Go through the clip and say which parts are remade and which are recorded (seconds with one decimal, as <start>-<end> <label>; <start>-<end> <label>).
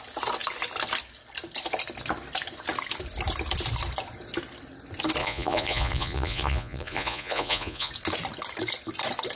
0.0-5.2 recorded; 5.2-7.9 remade; 7.9-9.4 recorded